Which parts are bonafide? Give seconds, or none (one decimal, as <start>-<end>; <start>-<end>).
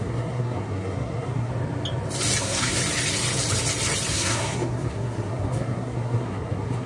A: 1.5-2.4; 2.8-4.1